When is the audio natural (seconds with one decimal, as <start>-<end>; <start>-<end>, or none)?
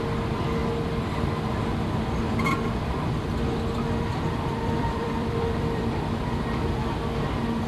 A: 0.0-4.1; 5.8-7.7